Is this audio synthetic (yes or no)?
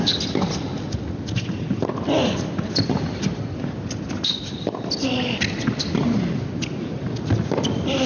no